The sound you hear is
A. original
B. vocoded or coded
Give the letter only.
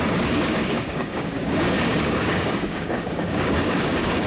B